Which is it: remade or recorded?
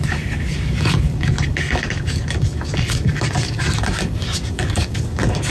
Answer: remade